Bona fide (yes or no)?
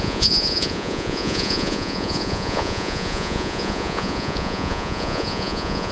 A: no